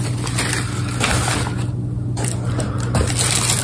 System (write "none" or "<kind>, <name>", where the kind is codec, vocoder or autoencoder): none